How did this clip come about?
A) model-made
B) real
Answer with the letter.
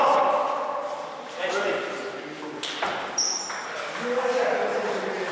B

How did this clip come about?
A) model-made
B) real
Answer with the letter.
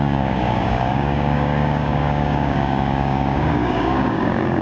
A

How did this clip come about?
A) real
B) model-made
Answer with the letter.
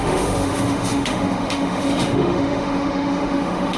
B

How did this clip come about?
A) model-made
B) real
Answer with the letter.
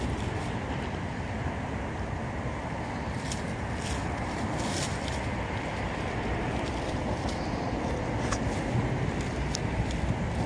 A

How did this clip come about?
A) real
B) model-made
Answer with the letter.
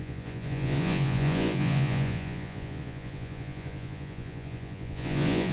B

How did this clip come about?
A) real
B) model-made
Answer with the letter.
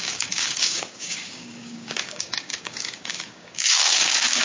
B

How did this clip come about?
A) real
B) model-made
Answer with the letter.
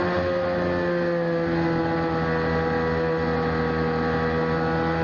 A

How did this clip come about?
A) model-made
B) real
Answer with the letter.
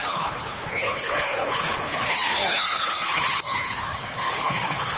A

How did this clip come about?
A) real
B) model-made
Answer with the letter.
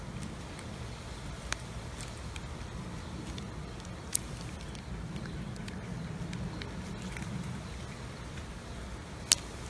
A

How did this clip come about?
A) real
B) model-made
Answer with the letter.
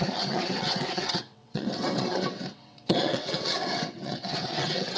B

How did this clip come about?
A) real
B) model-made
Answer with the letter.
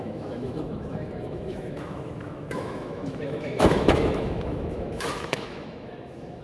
B